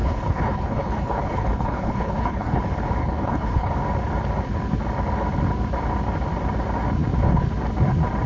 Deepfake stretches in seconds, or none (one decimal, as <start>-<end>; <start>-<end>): 0.0-2.6; 3.0-3.7